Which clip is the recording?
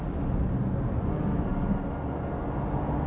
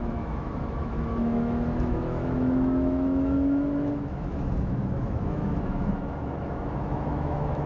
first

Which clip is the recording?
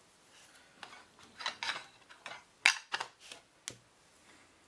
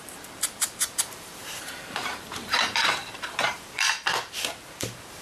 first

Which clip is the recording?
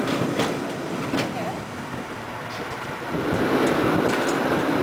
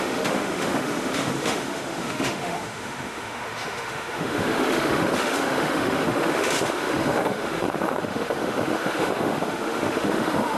first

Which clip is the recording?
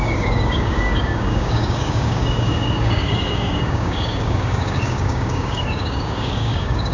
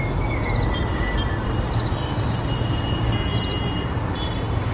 second